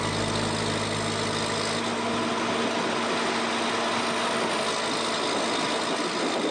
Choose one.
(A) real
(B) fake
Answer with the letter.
A